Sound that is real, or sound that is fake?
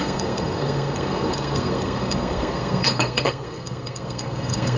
fake